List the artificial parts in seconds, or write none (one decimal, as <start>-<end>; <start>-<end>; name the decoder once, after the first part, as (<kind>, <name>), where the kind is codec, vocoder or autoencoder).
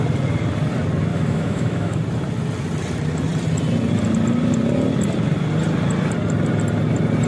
1.1-2.0 (autoencoder, DAC-VAE)